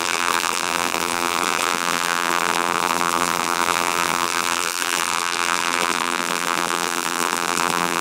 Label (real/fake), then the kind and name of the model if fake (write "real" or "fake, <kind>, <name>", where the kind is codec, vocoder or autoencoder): fake, vocoder, BigVGAN v2